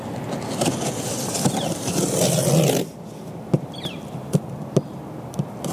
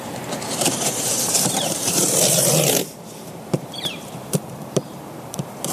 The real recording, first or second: first